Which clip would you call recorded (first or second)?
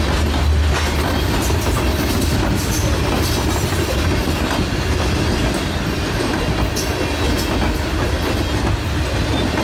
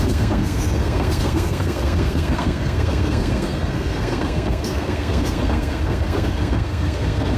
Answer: first